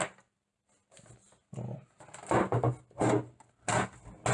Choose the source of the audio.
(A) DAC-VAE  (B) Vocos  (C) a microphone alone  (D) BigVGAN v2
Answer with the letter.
C